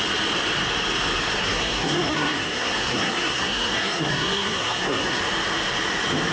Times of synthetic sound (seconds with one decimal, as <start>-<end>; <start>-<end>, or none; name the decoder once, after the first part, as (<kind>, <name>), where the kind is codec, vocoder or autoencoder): 1.4-5.2 (codec, SNAC)